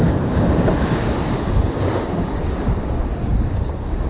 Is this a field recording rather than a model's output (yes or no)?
no